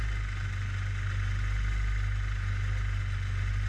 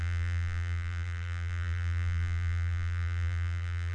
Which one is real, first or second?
first